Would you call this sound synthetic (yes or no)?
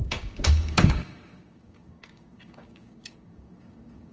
yes